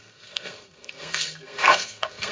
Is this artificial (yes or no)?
yes